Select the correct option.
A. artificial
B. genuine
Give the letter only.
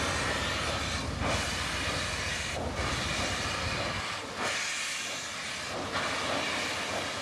B